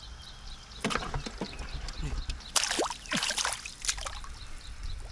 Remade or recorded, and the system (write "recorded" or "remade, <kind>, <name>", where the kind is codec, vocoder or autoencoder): recorded